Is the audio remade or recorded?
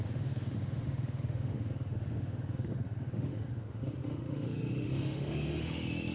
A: remade